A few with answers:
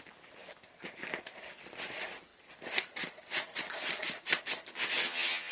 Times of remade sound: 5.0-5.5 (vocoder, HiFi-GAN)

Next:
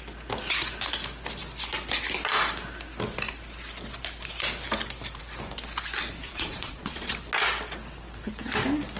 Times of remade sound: 6.2-7.1 (vocoder, Vocos)

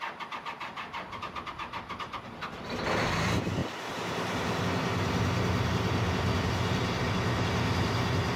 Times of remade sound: 3.6-4.6 (vocoder, BigVGAN v2)